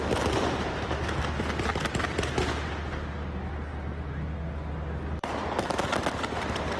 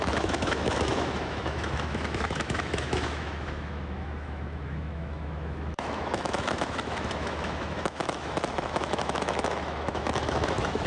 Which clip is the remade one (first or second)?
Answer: second